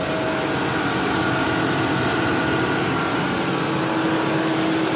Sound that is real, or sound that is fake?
real